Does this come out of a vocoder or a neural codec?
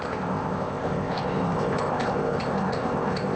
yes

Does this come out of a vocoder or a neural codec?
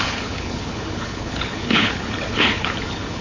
yes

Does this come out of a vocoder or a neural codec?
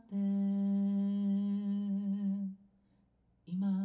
no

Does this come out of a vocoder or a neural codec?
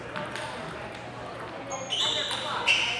no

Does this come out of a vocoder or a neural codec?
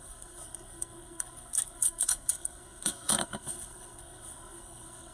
yes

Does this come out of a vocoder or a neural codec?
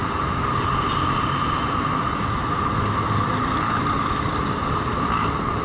no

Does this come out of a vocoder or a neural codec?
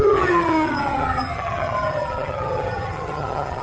yes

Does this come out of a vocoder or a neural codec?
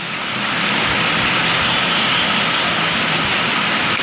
no